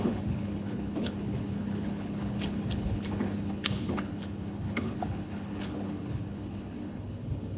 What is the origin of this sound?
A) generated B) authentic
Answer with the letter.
A